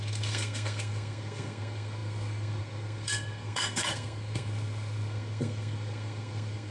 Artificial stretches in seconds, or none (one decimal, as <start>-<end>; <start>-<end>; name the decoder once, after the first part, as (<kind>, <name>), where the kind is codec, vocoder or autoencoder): 0.0-6.7 (codec, SNAC)

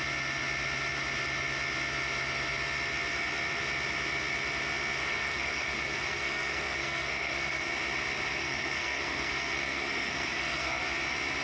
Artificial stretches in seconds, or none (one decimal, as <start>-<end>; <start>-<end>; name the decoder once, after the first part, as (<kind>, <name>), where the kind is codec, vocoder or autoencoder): 5.0-7.7 (codec, SNAC); 8.4-10.8

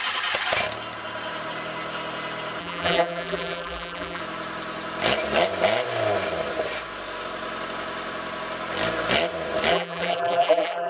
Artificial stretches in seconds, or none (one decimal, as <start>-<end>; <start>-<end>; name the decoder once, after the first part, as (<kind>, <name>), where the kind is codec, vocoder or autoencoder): 2.6-4.2 (vocoder, BigVGAN v2); 9.7-10.9

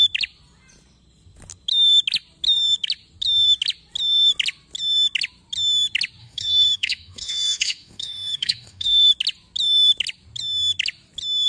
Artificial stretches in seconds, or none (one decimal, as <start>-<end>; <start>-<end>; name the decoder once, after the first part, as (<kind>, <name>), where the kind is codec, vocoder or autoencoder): 6.2-9.1 (autoencoder, DAC-VAE)

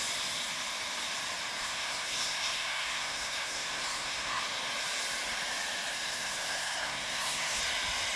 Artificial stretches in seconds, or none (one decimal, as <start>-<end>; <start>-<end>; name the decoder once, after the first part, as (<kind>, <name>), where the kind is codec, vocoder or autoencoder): 1.6-4.4 (codec, SNAC); 5.9-7.6